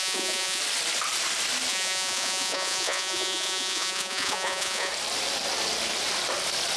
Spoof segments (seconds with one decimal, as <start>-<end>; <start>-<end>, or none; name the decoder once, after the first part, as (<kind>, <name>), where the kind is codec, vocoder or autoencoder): 0.0-0.6 (vocoder, Vocos); 1.7-4.9